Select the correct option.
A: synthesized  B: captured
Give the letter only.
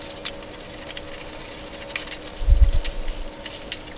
B